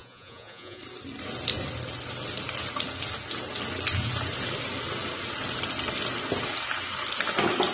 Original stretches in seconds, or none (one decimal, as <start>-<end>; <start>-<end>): 0.8-7.7